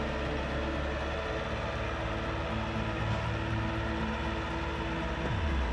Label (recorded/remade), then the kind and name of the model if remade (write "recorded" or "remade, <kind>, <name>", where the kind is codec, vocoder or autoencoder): recorded